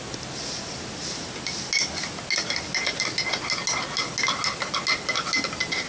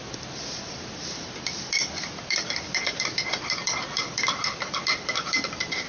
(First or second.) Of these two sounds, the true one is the first